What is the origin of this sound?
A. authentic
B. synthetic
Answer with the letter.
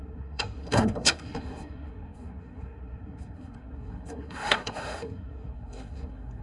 B